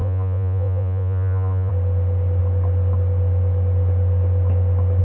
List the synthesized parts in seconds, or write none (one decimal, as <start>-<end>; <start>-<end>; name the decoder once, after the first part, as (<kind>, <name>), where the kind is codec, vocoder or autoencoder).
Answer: 0.0-1.7 (vocoder, Vocos)